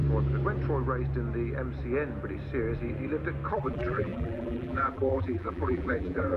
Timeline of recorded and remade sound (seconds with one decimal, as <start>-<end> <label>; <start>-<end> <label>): 0.0-3.5 recorded; 3.5-6.4 remade